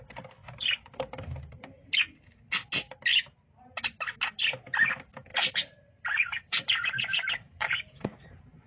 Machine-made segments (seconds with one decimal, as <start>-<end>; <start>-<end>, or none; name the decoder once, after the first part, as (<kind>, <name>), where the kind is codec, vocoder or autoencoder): 0.4-1.9 (vocoder, BigVGAN v2); 5.3-7.7

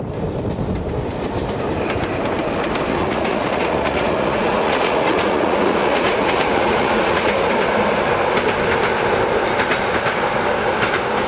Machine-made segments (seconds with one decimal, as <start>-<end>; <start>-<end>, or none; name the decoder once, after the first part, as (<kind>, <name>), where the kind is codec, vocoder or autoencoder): 2.9-7.5 (vocoder, Vocos)

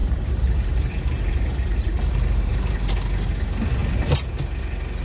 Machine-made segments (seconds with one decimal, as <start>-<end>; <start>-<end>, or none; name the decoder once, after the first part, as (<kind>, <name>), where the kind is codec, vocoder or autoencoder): 0.0-2.8 (vocoder, BigVGAN v2)

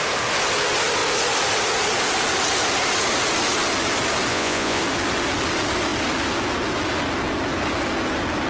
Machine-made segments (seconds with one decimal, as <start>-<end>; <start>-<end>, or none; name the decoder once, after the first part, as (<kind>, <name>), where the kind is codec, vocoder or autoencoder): 4.3-4.8 (vocoder, Vocos)